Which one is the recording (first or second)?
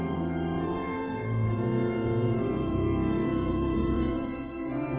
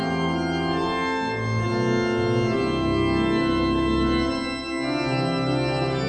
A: second